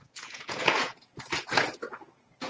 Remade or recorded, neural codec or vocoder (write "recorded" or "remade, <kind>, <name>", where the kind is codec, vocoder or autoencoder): remade, vocoder, Vocos